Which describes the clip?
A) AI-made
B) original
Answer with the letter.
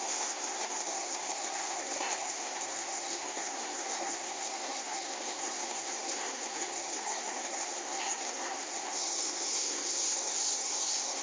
A